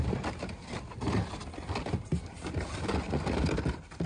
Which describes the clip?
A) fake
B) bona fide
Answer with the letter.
B